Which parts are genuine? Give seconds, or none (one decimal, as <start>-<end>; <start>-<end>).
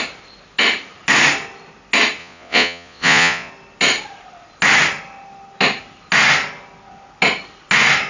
0.0-2.2; 3.5-8.1